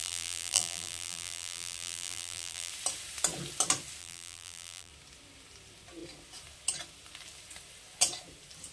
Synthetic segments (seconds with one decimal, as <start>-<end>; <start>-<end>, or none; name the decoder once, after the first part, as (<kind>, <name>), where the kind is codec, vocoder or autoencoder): 0.0-2.7 (vocoder, BigVGAN v2); 4.0-4.9